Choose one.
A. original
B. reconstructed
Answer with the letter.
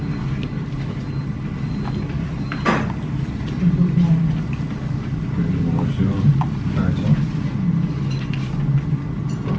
A